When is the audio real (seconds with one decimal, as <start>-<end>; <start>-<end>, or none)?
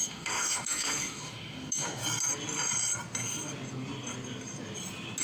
2.0-5.2